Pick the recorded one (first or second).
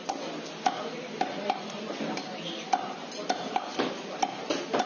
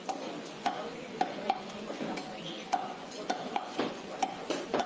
first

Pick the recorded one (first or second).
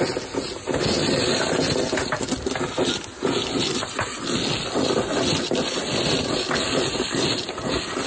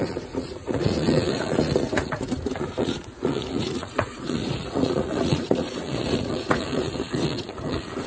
first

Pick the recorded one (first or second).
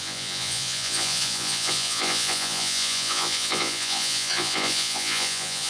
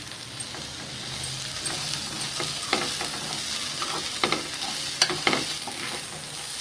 second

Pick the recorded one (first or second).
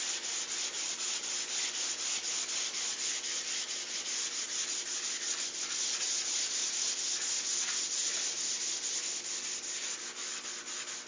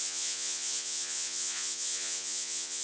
first